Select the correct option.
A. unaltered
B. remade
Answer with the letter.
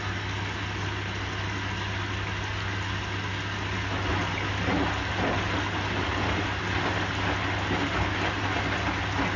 A